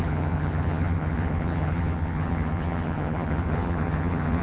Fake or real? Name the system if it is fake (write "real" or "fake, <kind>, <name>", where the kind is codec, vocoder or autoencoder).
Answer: fake, vocoder, HiFi-GAN